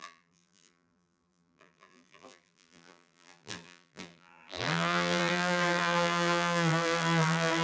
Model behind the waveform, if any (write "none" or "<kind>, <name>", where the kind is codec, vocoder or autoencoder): vocoder, BigVGAN v2